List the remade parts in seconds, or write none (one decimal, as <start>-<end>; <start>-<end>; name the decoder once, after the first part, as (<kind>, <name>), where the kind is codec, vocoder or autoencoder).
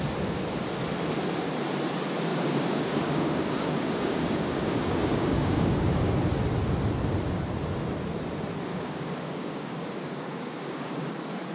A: 2.3-6.1 (codec, DAC); 8.7-11.1